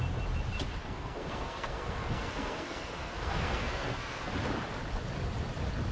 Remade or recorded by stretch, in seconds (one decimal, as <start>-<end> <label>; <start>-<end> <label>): 0.0-0.8 recorded; 0.8-4.3 remade; 4.3-5.9 recorded

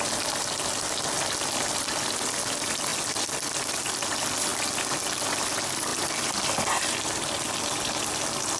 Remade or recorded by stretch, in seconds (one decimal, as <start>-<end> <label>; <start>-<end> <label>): 0.0-8.6 recorded

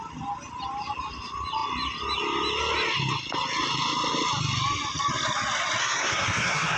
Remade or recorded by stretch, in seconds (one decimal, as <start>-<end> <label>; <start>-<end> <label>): 0.0-5.8 recorded; 5.8-6.8 remade